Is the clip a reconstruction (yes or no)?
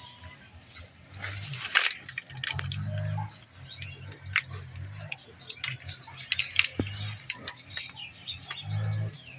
no